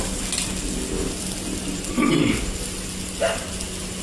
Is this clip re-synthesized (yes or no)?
no